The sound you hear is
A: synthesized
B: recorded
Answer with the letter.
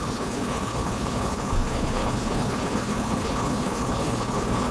A